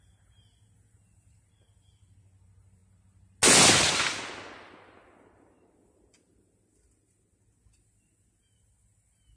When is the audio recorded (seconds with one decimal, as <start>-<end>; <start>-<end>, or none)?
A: 0.0-9.4

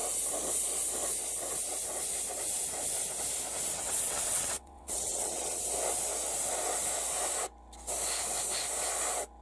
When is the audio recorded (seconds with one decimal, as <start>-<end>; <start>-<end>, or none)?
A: 0.0-3.7; 5.6-9.4